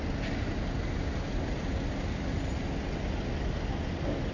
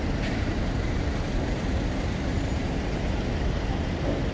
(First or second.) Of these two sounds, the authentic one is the first